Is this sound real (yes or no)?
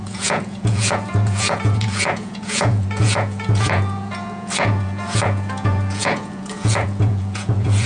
no